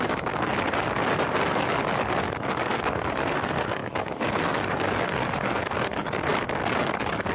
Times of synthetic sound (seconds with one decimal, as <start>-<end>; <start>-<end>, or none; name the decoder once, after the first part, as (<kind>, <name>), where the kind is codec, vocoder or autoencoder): 0.0-0.5 (codec, DAC); 1.5-6.3; 6.8-7.3

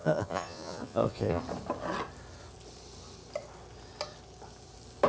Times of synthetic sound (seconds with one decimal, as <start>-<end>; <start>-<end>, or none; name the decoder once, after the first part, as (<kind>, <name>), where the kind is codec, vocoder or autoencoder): 0.0-1.4 (vocoder, Vocos)

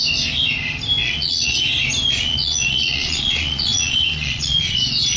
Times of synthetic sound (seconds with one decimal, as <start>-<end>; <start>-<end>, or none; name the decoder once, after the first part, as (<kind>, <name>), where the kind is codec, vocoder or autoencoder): 1.0-1.6 (vocoder, Vocos); 2.1-4.8